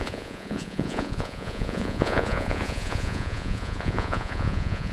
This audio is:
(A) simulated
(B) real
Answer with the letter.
A